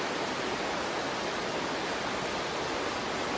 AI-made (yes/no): no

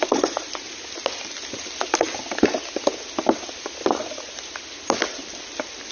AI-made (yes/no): no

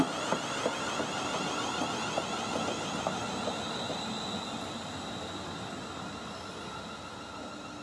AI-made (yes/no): no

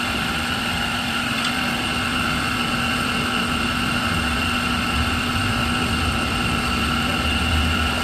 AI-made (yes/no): no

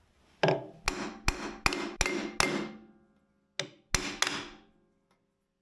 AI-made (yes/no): no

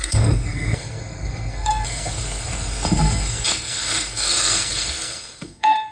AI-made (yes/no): yes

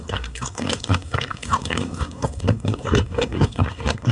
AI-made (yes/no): yes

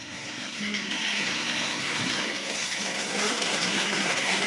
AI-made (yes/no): yes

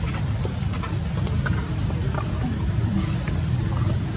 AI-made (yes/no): no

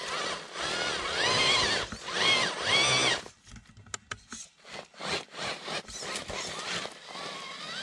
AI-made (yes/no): no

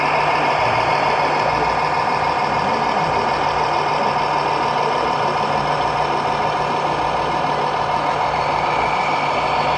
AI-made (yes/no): no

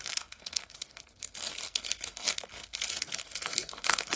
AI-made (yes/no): yes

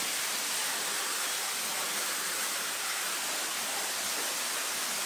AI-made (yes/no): no